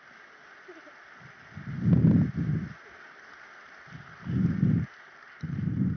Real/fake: real